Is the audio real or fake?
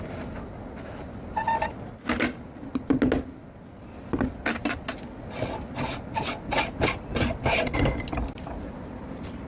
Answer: real